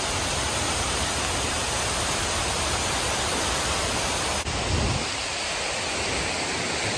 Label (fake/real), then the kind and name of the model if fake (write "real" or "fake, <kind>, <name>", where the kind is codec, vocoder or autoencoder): real